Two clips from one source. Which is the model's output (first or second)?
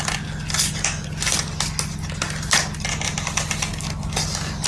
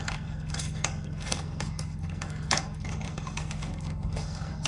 second